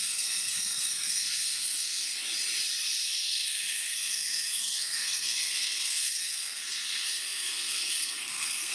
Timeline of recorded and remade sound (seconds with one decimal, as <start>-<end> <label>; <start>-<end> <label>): 0.0-2.1 remade; 2.1-3.2 recorded; 3.2-8.7 remade